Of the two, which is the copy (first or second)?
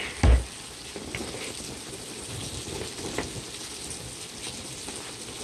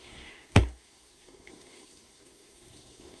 second